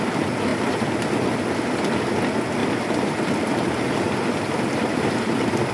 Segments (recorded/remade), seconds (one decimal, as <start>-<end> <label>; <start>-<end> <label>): 0.0-0.5 recorded; 0.5-2.1 remade; 2.1-2.6 recorded; 2.6-5.7 remade